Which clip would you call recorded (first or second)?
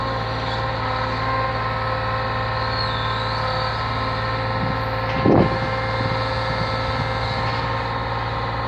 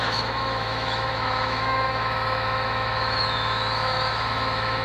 first